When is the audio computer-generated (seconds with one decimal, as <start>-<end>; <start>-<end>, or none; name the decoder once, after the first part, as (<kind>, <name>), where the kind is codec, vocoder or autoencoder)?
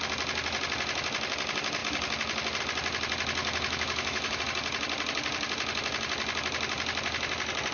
3.4-4.4 (autoencoder, DAC-VAE)